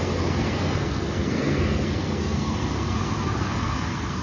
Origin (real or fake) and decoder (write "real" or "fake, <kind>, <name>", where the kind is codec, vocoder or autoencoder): fake, codec, SNAC